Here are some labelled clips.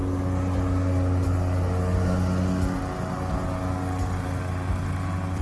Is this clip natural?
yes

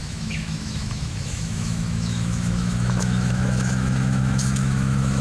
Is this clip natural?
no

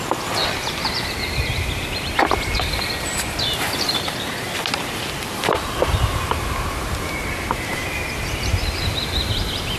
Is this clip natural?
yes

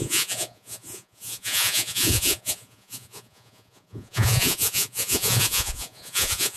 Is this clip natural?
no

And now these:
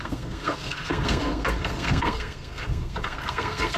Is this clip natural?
no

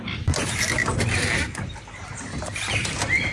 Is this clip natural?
yes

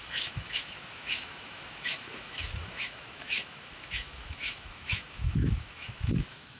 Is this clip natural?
no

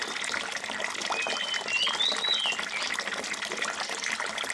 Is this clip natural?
yes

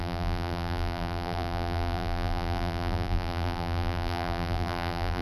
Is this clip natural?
no